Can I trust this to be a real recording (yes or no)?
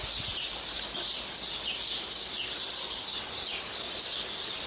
yes